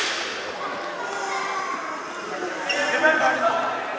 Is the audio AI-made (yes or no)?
no